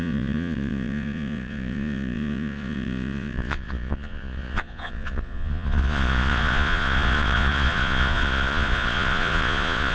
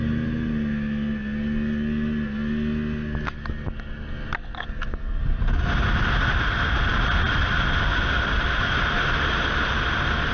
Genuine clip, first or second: second